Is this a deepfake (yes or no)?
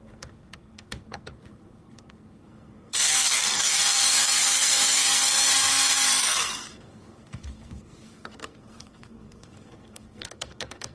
yes